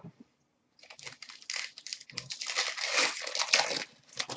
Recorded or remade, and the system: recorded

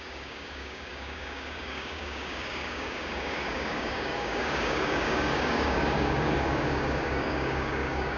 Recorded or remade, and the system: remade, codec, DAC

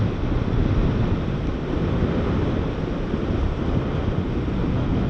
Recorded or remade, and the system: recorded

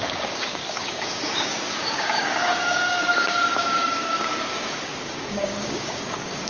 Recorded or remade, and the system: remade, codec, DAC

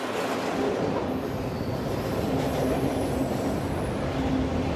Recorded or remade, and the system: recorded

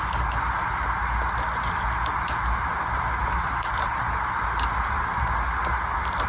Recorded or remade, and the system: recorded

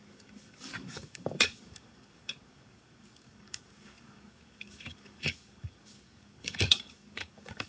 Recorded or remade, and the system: remade, codec, DAC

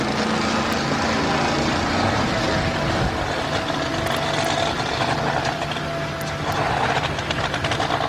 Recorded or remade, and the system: recorded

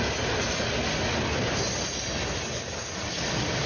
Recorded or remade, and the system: recorded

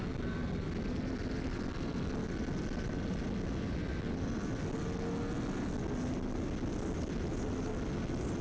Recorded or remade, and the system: recorded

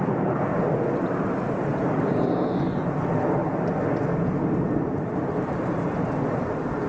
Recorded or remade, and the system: recorded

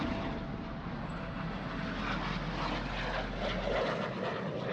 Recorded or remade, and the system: recorded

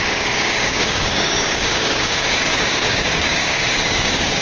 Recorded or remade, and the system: remade, codec, DAC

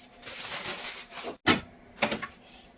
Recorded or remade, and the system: recorded